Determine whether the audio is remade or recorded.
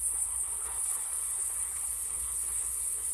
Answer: remade